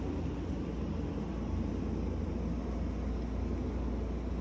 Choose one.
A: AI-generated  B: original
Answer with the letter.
B